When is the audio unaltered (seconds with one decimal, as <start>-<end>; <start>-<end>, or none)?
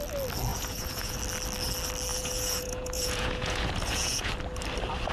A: 0.0-0.5; 1.2-2.1; 4.3-5.1